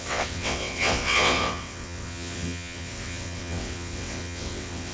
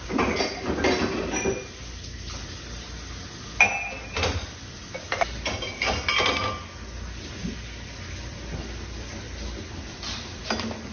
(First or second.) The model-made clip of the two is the first